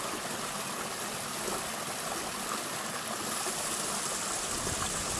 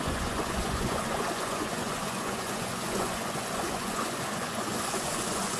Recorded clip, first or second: first